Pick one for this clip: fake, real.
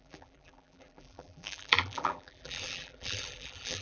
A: fake